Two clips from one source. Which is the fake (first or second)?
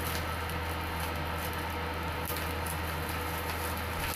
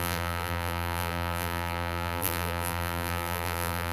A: second